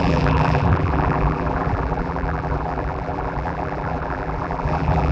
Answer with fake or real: fake